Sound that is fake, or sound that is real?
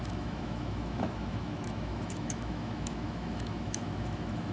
fake